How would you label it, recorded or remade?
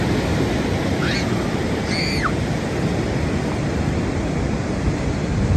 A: recorded